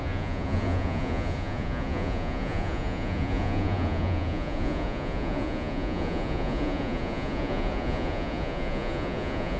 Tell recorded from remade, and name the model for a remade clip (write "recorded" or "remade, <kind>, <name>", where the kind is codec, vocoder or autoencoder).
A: remade, vocoder, Vocos